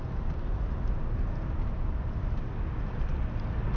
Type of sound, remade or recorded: recorded